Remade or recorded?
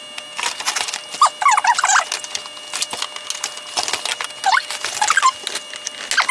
recorded